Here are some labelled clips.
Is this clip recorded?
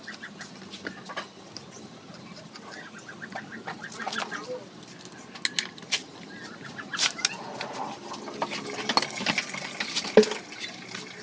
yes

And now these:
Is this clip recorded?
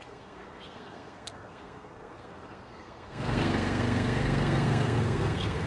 no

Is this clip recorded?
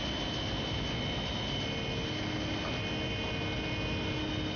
yes